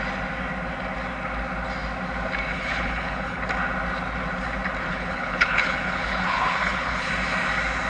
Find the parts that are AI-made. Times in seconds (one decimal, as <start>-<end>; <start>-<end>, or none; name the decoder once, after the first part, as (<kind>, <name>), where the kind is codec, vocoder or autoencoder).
2.5-3.4 (codec, HILCodec); 4.9-7.1